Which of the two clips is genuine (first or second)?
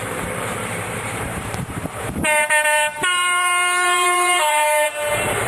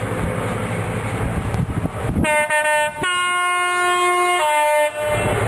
second